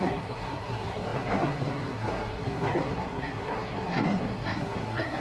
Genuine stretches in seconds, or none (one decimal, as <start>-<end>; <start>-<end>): none